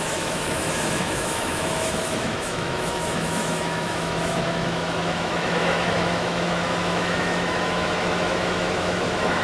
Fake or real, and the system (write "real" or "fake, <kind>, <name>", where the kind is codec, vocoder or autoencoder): fake, autoencoder, DAC-VAE